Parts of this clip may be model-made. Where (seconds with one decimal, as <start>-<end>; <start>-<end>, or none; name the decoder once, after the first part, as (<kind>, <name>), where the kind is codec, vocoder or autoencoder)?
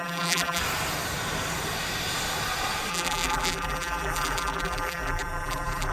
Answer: 0.0-0.6 (vocoder, BigVGAN v2); 2.9-5.9